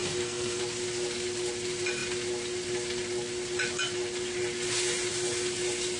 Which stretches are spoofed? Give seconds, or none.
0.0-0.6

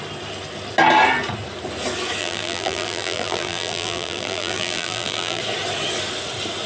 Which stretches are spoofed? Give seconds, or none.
2.2-5.4

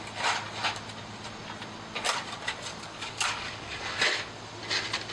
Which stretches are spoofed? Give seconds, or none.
2.7-4.0

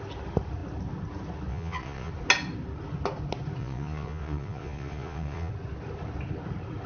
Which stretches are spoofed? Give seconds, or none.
1.5-2.1; 3.6-5.5